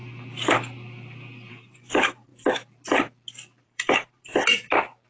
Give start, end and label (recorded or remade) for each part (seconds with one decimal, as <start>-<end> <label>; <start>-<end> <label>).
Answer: 0.0-1.5 recorded; 1.5-2.3 remade; 2.3-3.6 recorded; 3.6-4.3 remade; 4.3-5.1 recorded